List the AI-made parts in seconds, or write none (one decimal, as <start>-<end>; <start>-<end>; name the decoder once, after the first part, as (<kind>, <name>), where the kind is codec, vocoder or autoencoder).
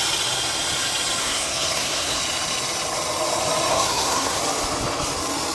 1.2-2.2 (codec, SNAC); 3.7-4.4